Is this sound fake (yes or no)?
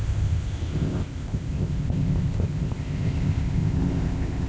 yes